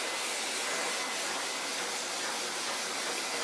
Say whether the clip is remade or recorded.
recorded